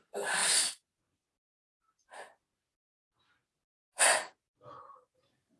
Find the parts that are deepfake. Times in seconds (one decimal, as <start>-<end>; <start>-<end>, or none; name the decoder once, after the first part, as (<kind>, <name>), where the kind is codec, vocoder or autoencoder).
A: none